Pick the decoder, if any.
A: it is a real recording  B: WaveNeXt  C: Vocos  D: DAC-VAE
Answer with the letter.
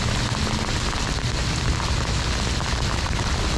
A